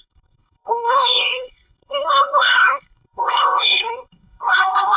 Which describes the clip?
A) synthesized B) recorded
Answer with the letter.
A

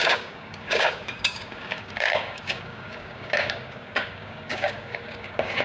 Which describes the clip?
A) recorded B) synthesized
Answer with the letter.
B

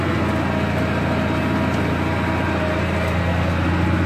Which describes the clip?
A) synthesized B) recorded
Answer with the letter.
B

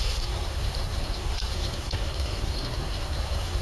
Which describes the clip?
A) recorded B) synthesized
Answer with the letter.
B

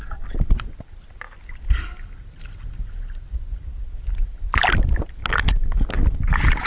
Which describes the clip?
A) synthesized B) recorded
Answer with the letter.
B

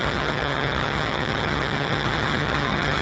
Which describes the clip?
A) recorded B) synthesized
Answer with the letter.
B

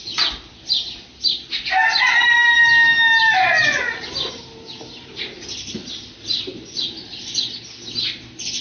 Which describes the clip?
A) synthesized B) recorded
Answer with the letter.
B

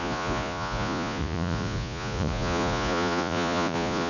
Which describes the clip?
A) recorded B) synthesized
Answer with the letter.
B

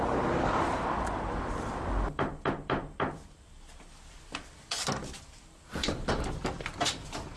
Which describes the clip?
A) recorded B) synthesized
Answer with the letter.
B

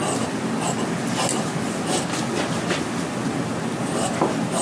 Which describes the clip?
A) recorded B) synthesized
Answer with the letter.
A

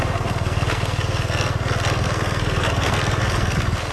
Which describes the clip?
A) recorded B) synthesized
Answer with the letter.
B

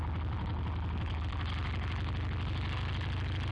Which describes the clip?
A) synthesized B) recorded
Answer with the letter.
B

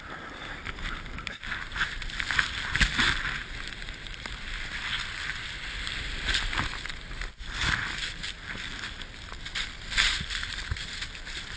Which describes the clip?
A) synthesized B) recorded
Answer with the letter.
B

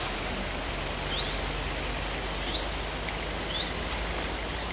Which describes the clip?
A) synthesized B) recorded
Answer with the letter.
B